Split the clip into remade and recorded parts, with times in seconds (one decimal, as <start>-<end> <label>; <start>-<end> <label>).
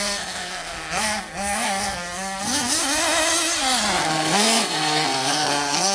0.0-2.8 remade; 2.8-4.0 recorded; 4.0-5.9 remade